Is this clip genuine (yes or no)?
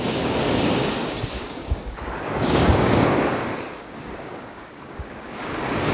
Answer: no